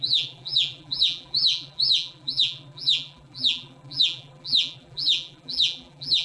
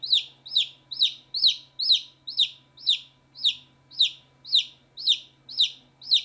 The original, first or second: second